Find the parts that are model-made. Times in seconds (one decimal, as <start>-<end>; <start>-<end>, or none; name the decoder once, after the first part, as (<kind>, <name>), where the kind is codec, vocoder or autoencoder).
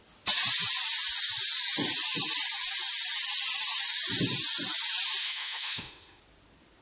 5.2-6.2 (autoencoder, DAC-VAE)